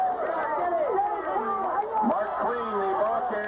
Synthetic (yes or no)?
no